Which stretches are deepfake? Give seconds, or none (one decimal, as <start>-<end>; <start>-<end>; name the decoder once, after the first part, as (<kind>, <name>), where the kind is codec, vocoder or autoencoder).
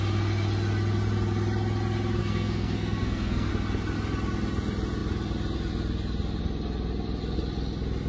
2.2-3.5 (codec, SNAC)